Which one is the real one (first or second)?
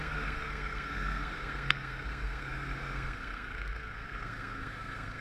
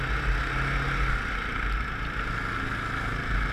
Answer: second